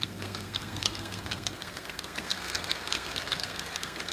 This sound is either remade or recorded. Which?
remade